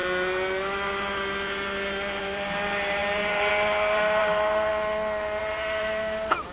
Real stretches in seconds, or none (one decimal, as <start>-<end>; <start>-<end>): 0.0-2.2; 4.7-5.4